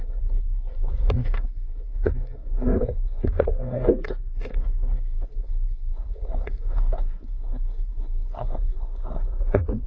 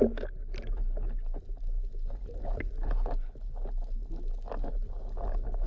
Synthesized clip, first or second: first